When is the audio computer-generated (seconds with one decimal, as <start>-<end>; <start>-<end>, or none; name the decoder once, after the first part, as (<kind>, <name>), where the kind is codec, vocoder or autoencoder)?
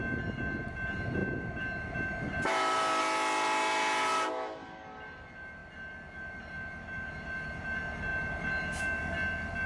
none